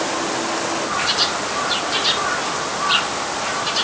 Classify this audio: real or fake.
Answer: real